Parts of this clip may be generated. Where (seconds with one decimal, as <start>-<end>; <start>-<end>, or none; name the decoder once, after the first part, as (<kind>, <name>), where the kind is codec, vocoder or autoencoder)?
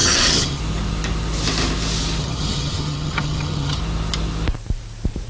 0.0-0.6 (vocoder, HiFi-GAN); 2.2-3.8